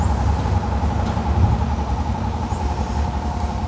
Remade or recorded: recorded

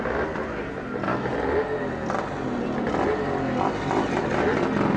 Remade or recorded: recorded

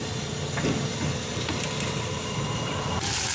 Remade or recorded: recorded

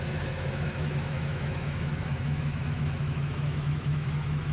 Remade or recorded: remade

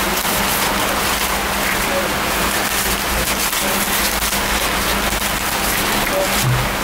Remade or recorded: recorded